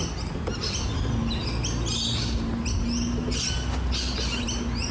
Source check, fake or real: real